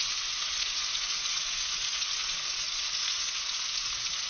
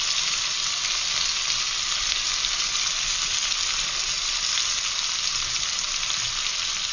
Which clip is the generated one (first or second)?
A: first